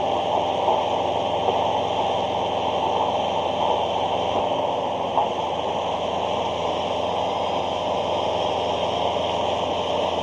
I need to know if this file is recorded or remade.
recorded